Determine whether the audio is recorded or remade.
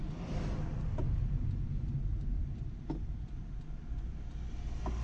recorded